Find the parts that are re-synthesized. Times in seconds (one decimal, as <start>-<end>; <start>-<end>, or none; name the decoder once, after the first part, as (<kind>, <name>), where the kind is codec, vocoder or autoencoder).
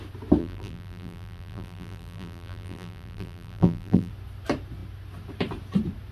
0.4-4.1 (vocoder, BigVGAN v2)